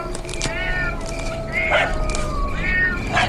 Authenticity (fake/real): real